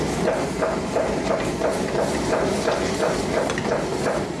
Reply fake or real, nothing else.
fake